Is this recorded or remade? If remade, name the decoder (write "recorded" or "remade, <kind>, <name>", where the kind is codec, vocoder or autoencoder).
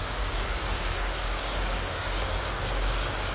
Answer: remade, codec, DAC